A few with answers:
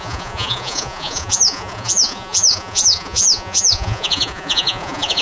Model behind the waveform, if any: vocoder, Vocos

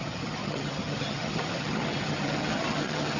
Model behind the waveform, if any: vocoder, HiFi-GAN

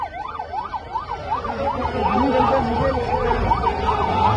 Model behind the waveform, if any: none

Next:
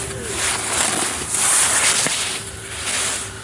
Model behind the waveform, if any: none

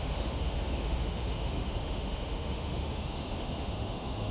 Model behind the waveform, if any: autoencoder, DAC-VAE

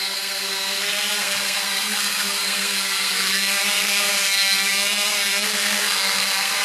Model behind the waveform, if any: codec, SNAC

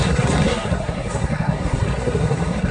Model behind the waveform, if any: codec, SNAC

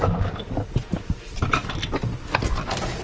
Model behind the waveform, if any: none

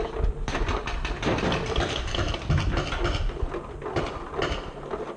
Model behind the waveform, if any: none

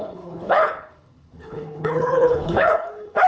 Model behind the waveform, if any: codec, HILCodec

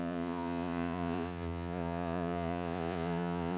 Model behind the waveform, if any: vocoder, Vocos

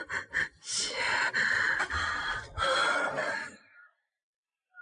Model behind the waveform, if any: none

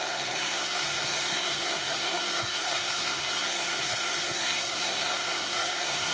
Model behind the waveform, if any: codec, SNAC